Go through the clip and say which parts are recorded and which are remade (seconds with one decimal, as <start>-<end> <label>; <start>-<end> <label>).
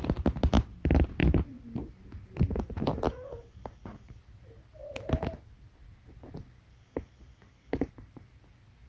0.0-3.1 recorded; 3.1-4.2 remade; 4.2-6.7 recorded; 6.7-7.9 remade; 7.9-8.9 recorded